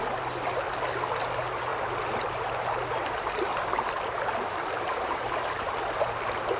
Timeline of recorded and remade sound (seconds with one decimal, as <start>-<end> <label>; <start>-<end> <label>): 0.0-6.6 recorded